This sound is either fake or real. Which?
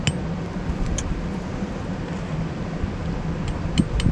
real